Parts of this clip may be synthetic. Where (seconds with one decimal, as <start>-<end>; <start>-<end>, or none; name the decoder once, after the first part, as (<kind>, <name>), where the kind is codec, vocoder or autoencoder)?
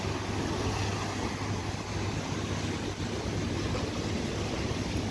none